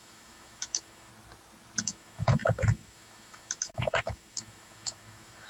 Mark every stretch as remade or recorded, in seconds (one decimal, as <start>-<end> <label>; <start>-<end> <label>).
0.0-1.1 remade; 1.1-1.8 recorded; 1.8-5.5 remade

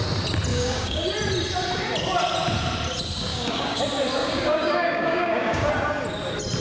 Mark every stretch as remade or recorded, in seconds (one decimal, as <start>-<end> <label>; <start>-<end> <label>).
0.0-0.5 recorded; 0.5-1.0 remade; 1.0-3.3 recorded; 3.3-3.8 remade; 3.8-4.2 recorded; 4.2-5.7 remade; 5.7-6.6 recorded